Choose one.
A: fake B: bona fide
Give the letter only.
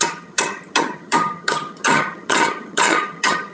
A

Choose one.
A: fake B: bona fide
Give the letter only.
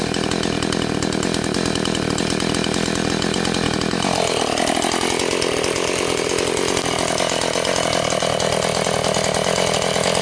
B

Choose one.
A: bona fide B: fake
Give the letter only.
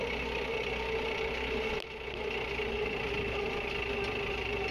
A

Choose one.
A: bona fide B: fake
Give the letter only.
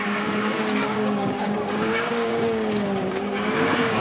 B